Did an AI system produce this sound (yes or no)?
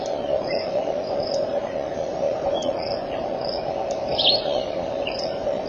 yes